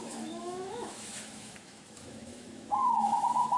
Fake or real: fake